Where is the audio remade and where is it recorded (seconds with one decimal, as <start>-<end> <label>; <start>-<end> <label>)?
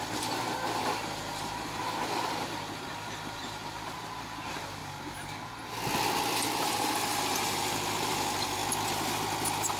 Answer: 0.0-4.8 remade; 4.8-6.6 recorded; 6.6-8.6 remade; 8.6-9.8 recorded